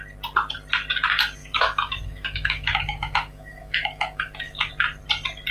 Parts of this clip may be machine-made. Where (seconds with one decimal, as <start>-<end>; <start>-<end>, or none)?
1.4-4.7